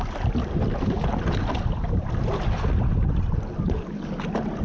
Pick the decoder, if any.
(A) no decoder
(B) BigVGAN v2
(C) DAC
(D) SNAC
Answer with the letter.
A